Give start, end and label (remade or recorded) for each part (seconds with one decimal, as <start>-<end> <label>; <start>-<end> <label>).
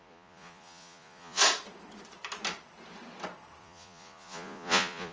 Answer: 0.0-1.4 remade; 1.4-3.6 recorded; 3.6-5.1 remade